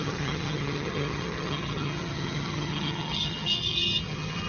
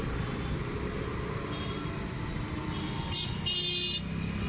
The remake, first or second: first